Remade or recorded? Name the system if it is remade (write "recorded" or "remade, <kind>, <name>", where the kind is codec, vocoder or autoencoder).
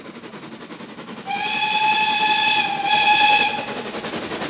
recorded